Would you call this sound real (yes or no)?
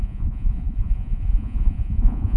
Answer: no